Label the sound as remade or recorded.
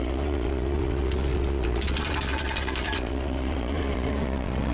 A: remade